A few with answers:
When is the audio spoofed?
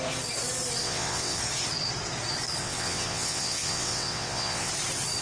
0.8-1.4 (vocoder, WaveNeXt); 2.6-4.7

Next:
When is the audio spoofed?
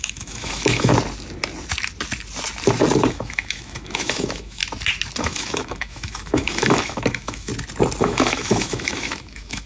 0.0-0.9 (autoencoder, DAC-VAE); 3.1-4.6; 5.2-7.5; 8.0-9.7